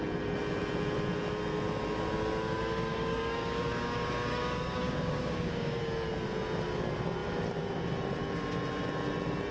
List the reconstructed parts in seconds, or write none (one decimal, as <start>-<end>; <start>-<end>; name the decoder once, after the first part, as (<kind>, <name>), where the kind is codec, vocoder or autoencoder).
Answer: 2.9-5.8 (codec, DAC)